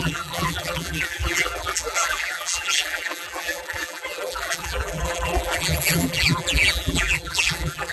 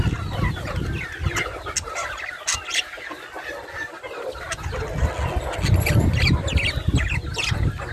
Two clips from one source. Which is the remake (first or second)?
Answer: first